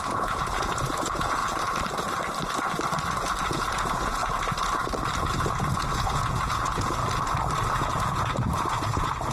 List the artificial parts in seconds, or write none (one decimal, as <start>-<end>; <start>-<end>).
0.0-1.4; 3.4-4.2; 5.3-7.0; 7.8-9.3